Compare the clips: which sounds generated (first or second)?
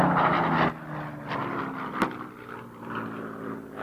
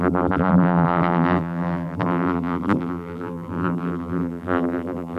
second